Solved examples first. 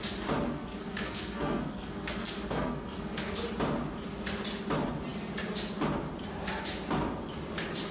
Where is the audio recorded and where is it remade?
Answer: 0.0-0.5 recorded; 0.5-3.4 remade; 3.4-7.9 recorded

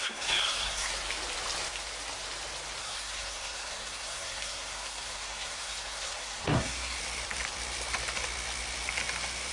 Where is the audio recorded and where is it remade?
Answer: 0.0-0.9 remade; 0.9-2.8 recorded; 2.8-7.0 remade; 7.0-9.5 recorded